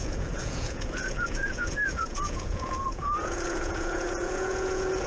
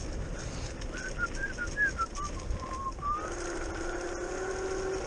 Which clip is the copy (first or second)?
first